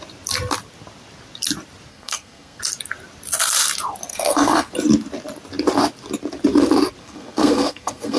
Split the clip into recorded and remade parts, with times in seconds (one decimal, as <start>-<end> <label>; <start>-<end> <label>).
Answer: 0.0-1.9 recorded; 1.9-2.6 remade; 2.6-4.1 recorded; 4.1-4.7 remade; 4.7-7.0 recorded; 7.0-8.2 remade